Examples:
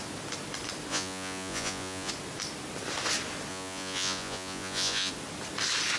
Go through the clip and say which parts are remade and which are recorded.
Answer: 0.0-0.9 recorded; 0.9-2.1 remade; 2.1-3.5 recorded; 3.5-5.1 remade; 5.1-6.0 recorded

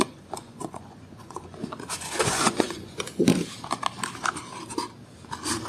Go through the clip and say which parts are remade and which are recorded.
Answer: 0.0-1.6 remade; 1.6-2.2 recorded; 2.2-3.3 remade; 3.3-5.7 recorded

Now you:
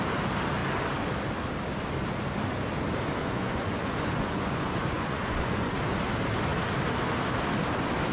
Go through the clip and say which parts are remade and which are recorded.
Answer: 0.0-3.2 recorded; 3.2-5.8 remade; 5.8-8.1 recorded

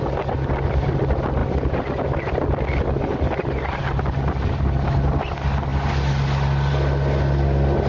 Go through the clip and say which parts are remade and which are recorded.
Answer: 0.0-7.9 recorded

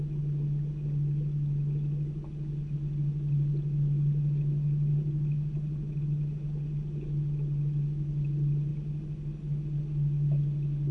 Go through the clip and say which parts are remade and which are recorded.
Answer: 0.0-10.9 recorded